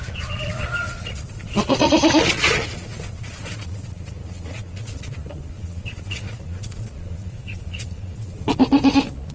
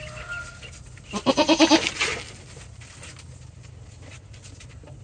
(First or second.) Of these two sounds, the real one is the second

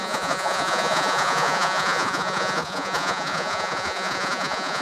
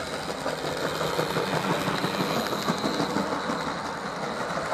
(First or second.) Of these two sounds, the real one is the second